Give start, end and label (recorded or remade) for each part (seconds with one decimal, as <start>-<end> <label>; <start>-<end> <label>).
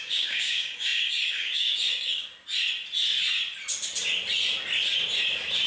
0.0-2.3 remade; 2.3-5.7 recorded